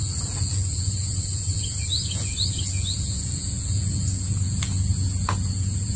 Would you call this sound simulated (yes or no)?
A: yes